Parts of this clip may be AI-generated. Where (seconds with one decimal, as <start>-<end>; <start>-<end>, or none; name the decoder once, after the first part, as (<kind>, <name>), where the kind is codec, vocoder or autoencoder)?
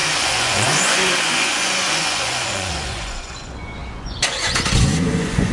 0.0-5.5 (vocoder, Vocos)